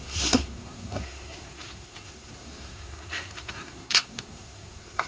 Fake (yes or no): yes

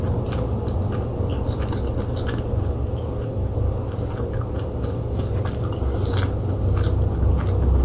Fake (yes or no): no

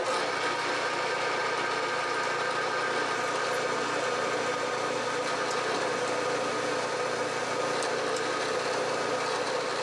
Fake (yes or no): no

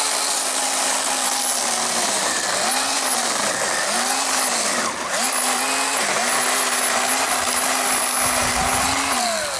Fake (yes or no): no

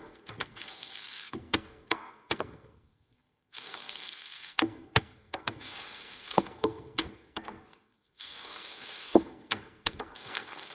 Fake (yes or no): yes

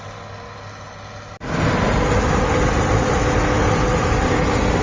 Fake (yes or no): no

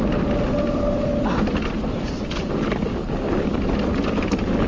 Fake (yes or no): no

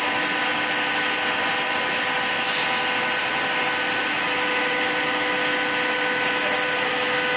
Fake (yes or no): no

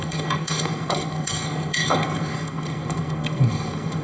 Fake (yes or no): yes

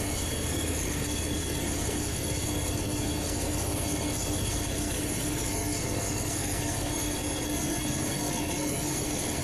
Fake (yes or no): yes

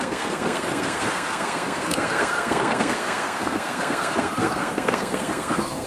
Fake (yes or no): yes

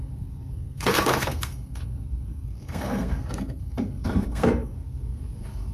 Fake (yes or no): yes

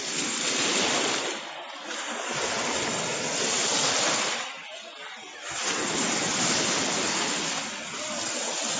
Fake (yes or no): no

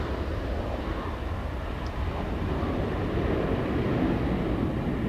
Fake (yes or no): no